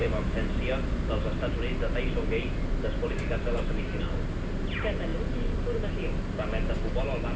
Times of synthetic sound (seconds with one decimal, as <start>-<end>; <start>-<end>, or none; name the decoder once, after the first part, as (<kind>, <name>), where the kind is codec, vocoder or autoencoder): none